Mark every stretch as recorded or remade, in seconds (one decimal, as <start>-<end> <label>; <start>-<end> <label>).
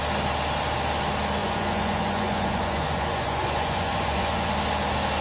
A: 0.0-1.4 recorded; 1.4-4.5 remade; 4.5-5.2 recorded